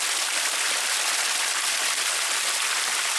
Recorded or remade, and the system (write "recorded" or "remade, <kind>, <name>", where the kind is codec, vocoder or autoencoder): recorded